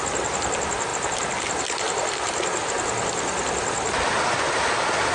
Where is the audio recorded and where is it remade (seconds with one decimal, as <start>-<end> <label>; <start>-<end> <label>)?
0.0-5.1 recorded